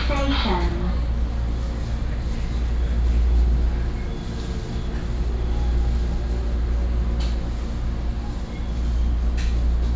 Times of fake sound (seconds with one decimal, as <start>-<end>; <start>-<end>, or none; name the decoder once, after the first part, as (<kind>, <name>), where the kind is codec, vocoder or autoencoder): none